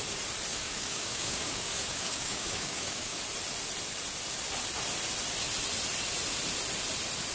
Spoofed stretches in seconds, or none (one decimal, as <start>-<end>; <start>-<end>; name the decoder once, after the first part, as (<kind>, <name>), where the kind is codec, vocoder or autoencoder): 0.5-3.2 (codec, DAC)